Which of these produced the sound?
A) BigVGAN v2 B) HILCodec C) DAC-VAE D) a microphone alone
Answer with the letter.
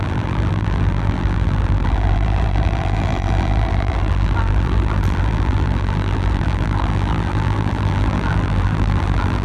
A